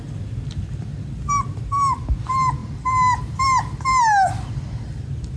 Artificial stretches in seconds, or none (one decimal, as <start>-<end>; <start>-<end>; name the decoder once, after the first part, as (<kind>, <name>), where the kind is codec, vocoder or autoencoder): none